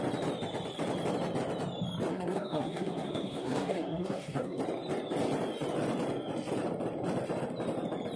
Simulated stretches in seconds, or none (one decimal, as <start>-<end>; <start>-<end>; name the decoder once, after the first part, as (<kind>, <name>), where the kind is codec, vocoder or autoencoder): 2.1-4.6 (codec, SNAC)